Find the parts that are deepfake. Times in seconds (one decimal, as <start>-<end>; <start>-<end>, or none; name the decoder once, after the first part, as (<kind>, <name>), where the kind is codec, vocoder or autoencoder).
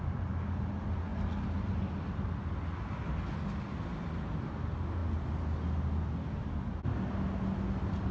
none